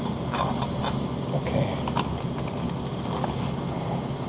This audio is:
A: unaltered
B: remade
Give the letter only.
A